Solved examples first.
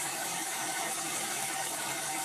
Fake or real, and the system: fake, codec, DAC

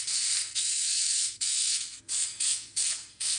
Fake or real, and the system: fake, codec, SNAC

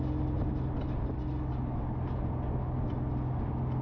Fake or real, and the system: real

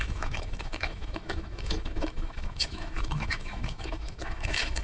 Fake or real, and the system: fake, autoencoder, DAC-VAE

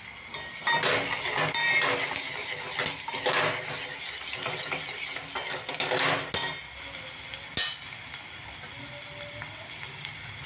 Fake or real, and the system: real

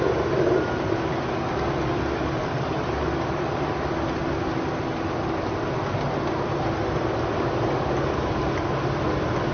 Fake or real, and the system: real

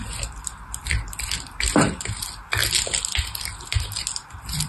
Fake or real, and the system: real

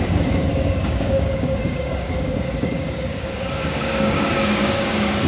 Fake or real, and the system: fake, codec, DAC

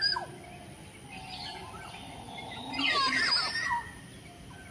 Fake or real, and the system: real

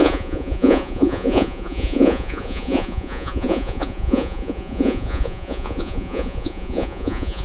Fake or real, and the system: fake, vocoder, Vocos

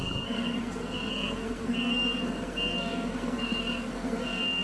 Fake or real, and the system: fake, codec, SNAC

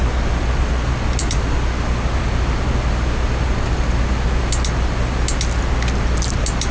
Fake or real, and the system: real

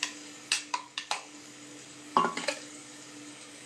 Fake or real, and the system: fake, codec, DAC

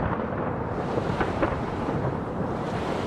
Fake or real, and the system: fake, vocoder, BigVGAN v2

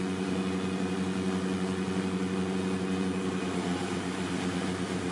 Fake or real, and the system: fake, vocoder, Vocos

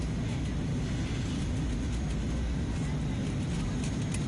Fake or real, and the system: real